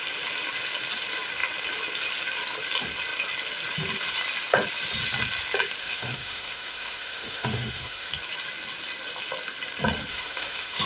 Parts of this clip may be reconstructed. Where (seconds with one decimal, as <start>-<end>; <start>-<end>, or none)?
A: 5.8-8.1; 10.1-10.9